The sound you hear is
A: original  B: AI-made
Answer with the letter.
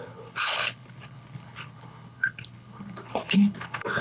B